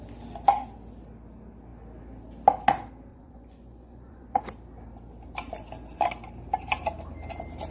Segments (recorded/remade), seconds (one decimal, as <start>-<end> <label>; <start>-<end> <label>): 0.0-3.1 recorded; 3.1-4.4 remade; 4.4-7.7 recorded